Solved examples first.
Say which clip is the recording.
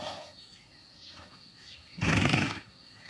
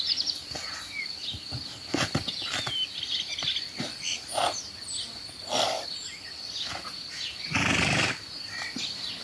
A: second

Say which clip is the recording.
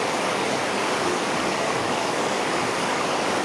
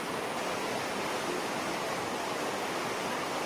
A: second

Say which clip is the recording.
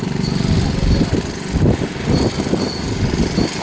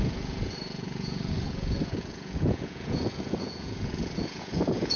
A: first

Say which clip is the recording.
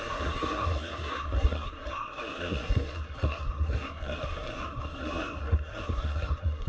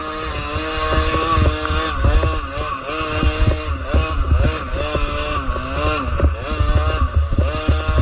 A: second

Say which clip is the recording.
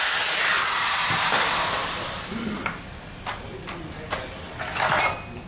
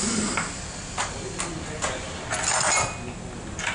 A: second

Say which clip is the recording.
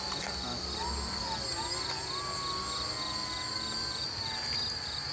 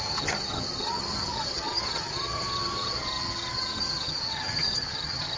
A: first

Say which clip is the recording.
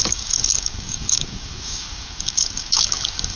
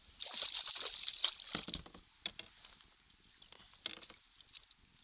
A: second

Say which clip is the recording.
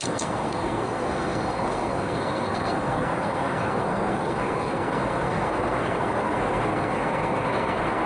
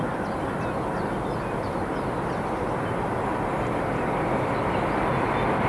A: second